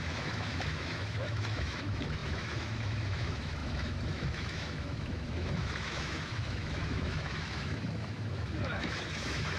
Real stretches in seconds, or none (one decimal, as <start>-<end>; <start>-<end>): none